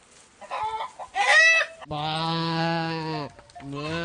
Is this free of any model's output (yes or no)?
yes